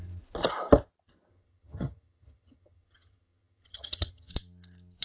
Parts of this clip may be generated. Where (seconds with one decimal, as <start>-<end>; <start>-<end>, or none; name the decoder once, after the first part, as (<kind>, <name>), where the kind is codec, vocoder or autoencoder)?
1.3-4.3 (vocoder, HiFi-GAN)